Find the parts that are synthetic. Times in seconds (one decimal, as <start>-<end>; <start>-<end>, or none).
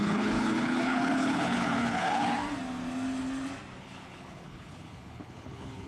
0.0-2.4; 3.8-5.9